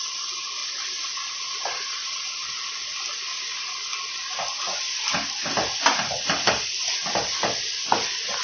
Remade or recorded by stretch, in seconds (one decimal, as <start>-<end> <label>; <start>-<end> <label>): 0.0-8.4 recorded